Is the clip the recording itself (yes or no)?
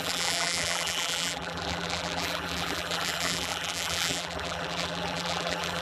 no